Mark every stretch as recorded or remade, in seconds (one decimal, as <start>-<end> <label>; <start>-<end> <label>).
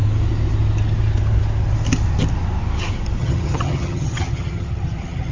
0.0-3.2 recorded; 3.2-5.3 remade